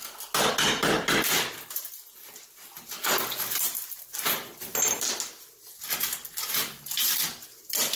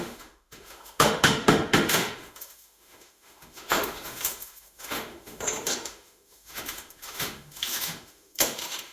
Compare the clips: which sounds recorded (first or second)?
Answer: first